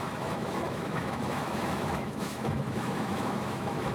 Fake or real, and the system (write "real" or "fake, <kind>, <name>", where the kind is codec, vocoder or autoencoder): fake, autoencoder, DAC-VAE